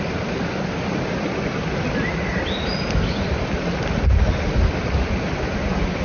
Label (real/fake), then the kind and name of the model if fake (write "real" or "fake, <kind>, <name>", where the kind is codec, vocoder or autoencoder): real